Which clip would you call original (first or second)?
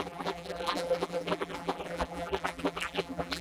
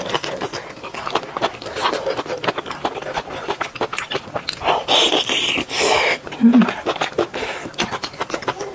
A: second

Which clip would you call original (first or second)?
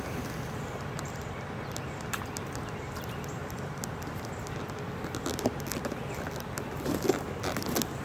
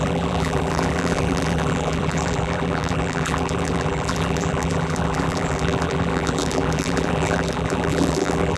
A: first